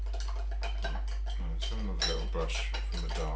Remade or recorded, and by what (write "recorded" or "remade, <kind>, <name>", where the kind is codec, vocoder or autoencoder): recorded